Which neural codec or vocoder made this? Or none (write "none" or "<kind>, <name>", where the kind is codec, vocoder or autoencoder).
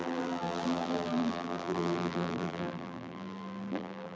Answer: vocoder, BigVGAN v2